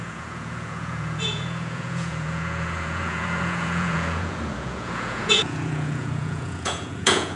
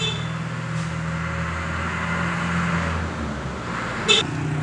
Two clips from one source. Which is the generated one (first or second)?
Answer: first